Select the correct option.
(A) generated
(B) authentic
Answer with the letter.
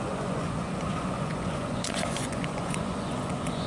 A